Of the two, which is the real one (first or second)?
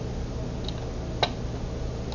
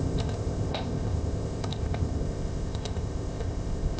first